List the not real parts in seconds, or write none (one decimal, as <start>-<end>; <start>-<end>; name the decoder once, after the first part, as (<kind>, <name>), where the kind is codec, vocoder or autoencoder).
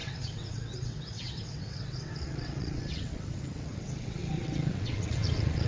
0.0-5.7 (vocoder, WaveNeXt)